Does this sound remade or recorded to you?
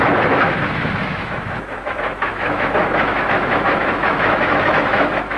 remade